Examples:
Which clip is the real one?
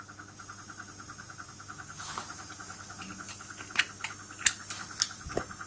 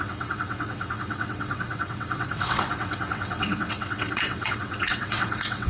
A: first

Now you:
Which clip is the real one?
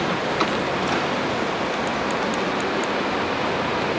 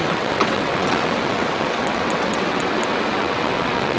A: first